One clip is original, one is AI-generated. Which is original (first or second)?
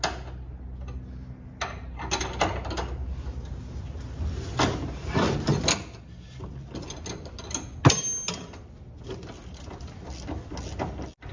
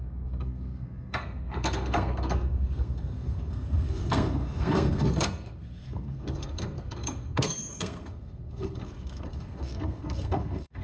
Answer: first